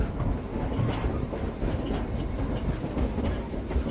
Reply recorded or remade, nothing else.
recorded